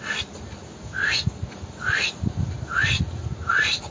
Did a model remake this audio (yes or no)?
no